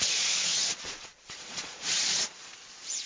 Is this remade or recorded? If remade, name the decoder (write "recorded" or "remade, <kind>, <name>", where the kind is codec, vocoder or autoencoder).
remade, vocoder, Vocos